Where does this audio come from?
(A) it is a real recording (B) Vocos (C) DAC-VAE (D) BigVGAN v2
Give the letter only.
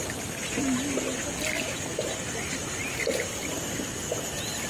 A